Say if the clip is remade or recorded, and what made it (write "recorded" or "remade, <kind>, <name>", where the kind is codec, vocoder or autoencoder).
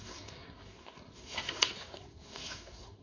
remade, codec, SNAC